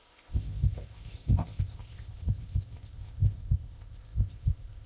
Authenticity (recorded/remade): remade